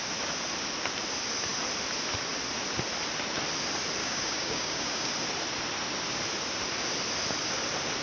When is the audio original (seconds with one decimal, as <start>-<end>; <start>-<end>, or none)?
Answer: 0.0-4.0; 5.1-8.0